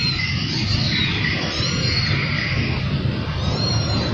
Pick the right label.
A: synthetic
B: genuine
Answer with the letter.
B